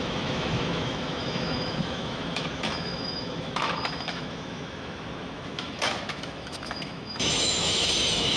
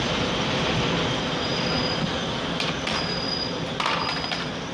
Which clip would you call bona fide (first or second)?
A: second